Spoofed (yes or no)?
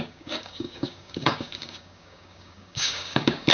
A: yes